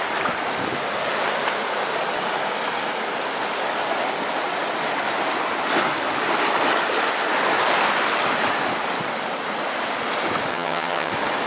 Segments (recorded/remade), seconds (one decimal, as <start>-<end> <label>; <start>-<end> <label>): 0.0-10.5 recorded; 10.5-11.1 remade; 11.1-11.5 recorded